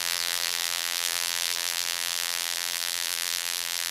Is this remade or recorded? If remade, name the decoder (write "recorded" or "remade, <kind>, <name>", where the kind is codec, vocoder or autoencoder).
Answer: remade, vocoder, BigVGAN v2